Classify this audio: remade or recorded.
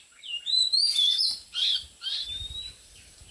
remade